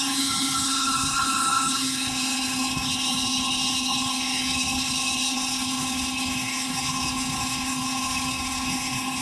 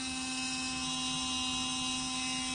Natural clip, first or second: second